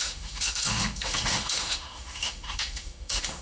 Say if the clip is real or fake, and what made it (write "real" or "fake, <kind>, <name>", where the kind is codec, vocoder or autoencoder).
fake, autoencoder, DAC-VAE